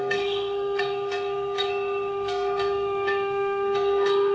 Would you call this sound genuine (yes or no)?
no